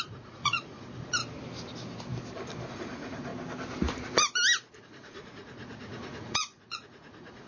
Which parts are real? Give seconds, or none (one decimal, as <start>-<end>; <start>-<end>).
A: 1.2-2.7; 3.3-4.8